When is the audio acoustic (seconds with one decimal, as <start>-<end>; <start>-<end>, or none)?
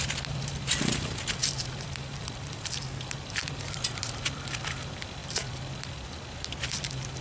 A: 0.0-1.4; 2.8-3.4; 4.3-5.2; 6.3-7.2